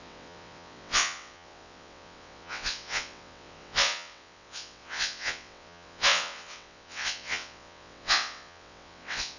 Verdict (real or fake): fake